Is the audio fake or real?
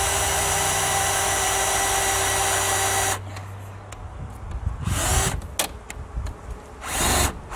real